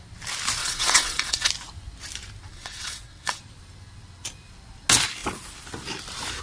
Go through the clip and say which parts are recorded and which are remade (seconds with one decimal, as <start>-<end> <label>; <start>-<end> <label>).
0.0-0.6 recorded; 0.6-1.5 remade; 1.5-2.5 recorded; 2.5-3.4 remade; 3.4-6.4 recorded